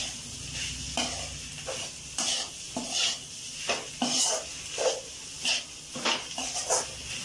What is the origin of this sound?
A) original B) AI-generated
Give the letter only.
A